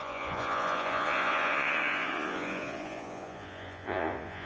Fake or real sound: fake